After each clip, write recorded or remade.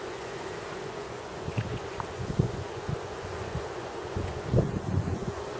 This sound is remade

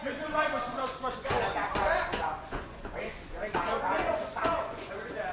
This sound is remade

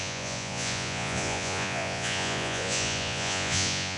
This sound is remade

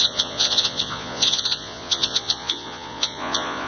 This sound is remade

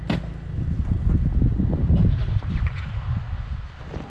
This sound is recorded